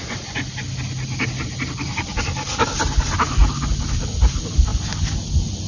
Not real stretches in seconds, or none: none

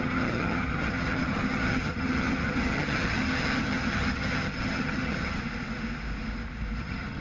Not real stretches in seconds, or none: 0.0-5.4 (vocoder, HiFi-GAN); 6.8-7.2

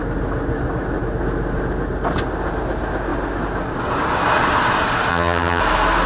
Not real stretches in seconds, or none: 5.1-5.6 (vocoder, HiFi-GAN)

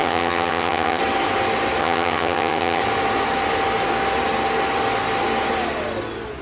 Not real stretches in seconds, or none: 0.0-1.0 (vocoder, HiFi-GAN); 1.8-2.8

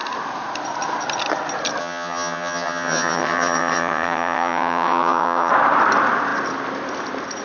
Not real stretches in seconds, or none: 1.8-5.5 (vocoder, HiFi-GAN)

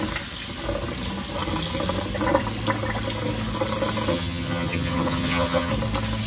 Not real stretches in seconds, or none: 4.1-5.7 (vocoder, HiFi-GAN)

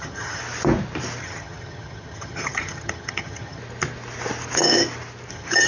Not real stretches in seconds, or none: 0.0-0.4 (vocoder, HiFi-GAN); 1.2-3.6; 5.3-5.7